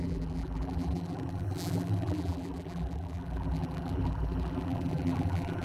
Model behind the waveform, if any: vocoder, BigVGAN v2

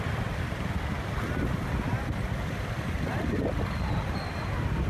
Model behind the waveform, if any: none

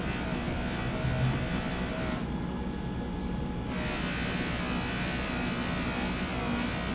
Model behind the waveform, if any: none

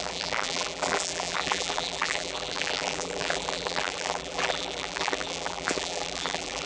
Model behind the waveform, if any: vocoder, BigVGAN v2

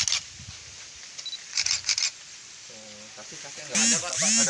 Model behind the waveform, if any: none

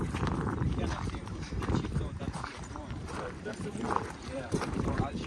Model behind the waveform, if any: vocoder, BigVGAN v2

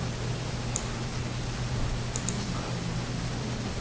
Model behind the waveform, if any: none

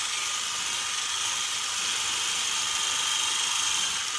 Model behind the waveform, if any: none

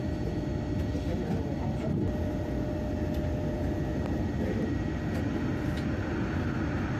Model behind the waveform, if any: none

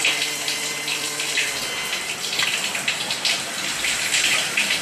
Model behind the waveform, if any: none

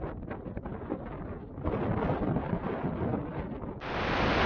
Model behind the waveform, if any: none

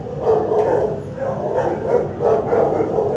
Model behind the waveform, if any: none